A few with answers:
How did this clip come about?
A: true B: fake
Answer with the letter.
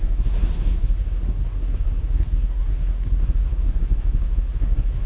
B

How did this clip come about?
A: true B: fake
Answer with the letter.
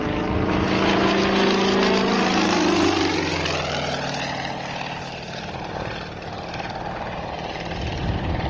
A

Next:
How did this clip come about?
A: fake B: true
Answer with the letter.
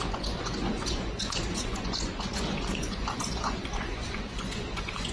A